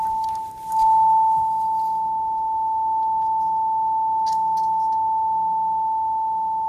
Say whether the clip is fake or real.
real